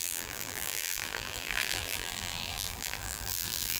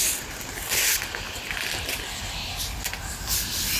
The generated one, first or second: first